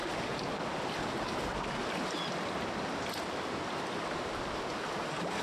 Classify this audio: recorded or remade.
recorded